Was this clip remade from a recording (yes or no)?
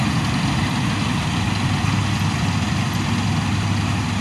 no